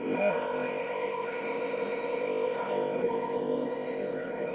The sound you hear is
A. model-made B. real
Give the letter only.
A